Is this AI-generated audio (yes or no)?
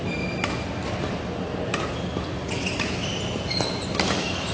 no